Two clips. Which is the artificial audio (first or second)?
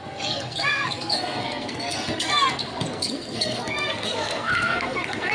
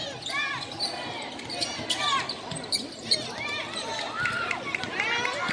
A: first